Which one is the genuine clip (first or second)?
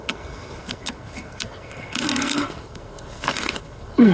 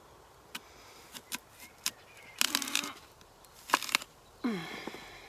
second